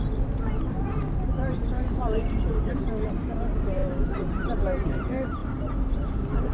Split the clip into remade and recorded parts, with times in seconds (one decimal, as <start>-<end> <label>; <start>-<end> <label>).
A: 0.0-1.2 recorded; 1.2-5.4 remade; 5.4-6.5 recorded